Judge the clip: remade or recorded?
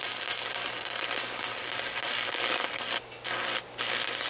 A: recorded